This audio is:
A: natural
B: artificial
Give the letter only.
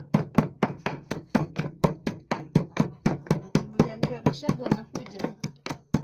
B